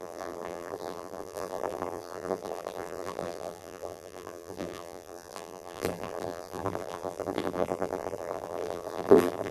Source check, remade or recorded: remade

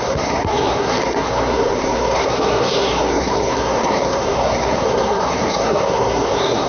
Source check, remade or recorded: remade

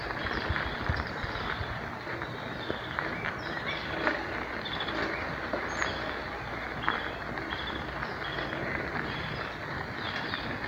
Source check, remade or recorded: recorded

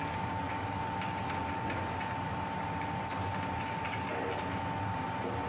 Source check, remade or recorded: recorded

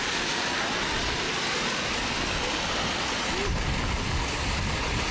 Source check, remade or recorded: recorded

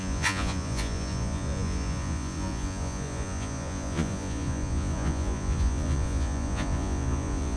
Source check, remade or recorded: remade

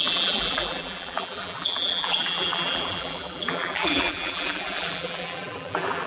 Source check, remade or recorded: remade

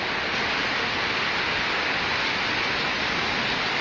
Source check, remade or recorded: recorded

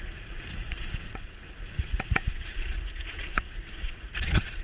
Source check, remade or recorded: remade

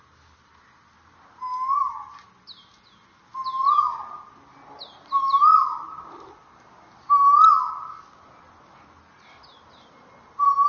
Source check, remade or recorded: recorded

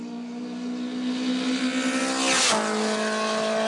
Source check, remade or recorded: recorded